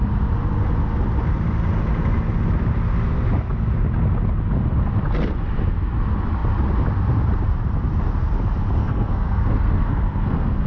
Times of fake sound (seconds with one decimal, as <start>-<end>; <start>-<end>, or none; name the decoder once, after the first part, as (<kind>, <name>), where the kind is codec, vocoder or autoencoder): 8.8-10.7 (codec, SNAC)